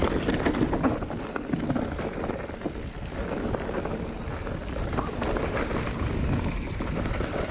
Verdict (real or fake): real